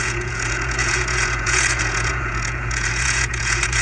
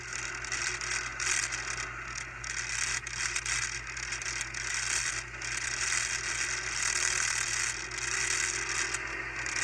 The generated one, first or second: first